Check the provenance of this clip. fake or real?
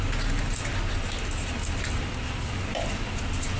real